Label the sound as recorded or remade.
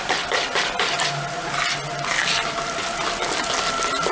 recorded